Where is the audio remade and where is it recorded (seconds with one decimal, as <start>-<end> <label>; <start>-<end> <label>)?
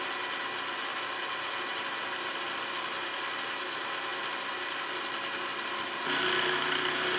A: 0.0-7.2 recorded